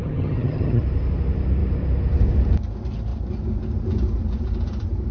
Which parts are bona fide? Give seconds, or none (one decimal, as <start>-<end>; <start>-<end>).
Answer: 0.8-5.1